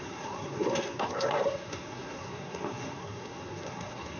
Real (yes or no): no